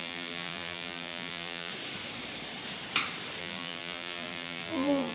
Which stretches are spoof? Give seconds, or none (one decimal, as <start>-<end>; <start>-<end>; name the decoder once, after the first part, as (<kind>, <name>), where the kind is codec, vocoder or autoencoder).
0.0-1.7 (vocoder, BigVGAN v2); 3.4-5.1